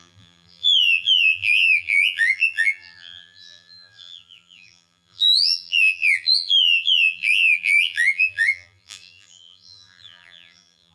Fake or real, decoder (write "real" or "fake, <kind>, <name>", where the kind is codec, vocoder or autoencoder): fake, vocoder, BigVGAN v2